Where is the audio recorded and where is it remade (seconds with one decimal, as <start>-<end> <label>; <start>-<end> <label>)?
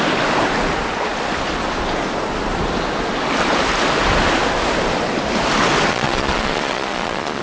0.0-5.9 recorded; 5.9-7.4 remade